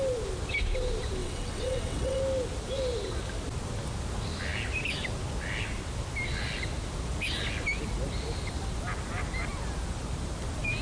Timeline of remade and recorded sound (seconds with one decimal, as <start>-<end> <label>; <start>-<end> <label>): 0.0-1.2 recorded; 1.2-2.2 remade; 2.2-10.8 recorded